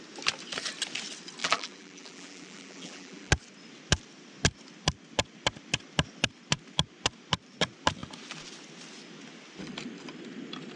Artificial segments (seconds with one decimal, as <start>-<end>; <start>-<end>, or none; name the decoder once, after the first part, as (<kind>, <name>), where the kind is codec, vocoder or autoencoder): 1.4-3.3 (vocoder, BigVGAN v2)